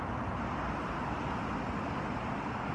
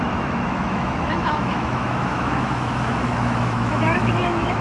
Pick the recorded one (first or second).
first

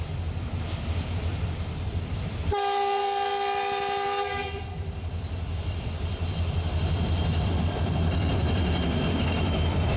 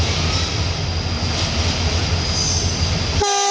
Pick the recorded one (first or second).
second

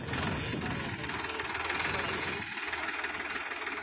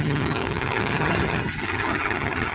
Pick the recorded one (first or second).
first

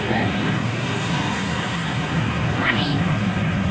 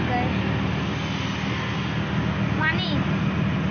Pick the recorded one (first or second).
second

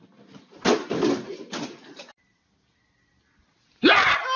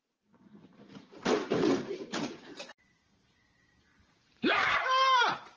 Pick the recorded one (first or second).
first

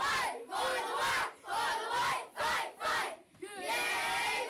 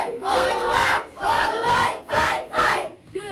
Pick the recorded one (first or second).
first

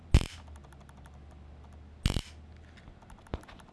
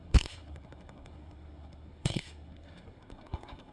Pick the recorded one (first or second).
first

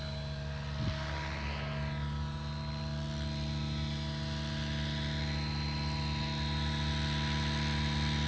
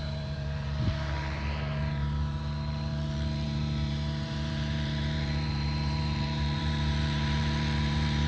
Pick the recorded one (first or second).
first